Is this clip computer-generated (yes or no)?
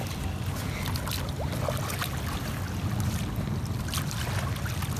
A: no